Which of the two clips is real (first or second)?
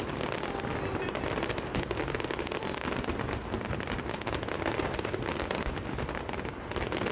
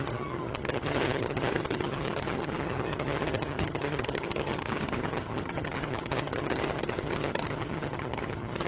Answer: first